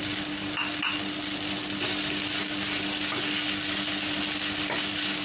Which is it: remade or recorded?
recorded